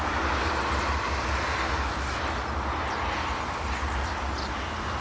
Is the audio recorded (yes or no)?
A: yes